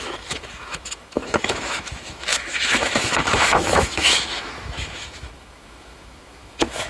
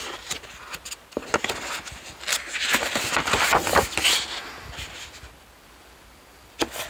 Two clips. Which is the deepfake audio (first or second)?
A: first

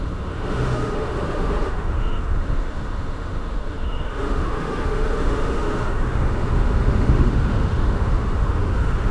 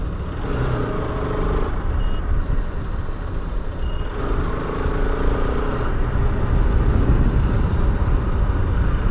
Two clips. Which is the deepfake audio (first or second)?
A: first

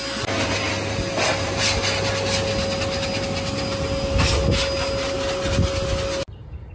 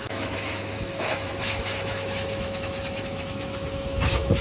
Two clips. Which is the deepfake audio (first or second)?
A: second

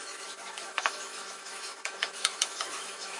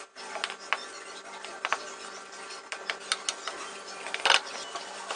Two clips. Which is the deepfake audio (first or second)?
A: first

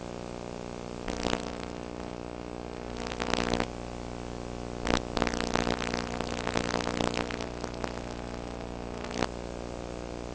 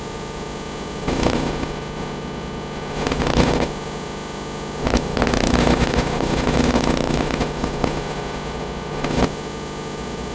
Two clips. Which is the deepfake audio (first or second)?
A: second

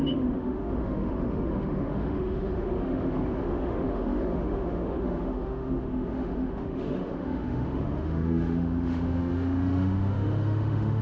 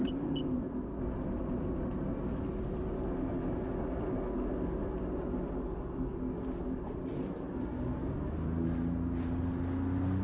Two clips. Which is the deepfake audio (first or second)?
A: first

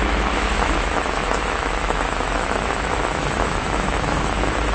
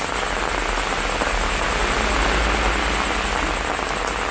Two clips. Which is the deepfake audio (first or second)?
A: first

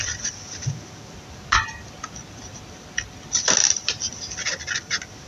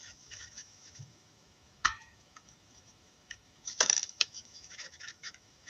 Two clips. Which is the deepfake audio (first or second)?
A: second